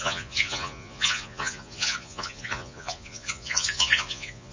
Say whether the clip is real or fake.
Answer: fake